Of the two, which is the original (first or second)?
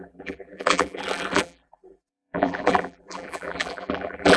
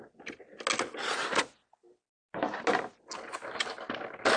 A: second